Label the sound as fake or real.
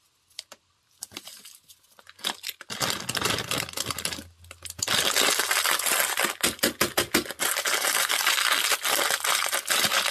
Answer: real